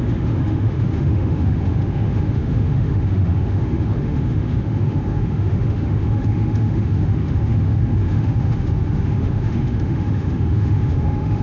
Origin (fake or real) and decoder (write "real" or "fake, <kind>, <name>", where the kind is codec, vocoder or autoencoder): fake, autoencoder, DAC-VAE